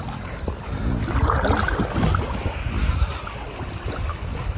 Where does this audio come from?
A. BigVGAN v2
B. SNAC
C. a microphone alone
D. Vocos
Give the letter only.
C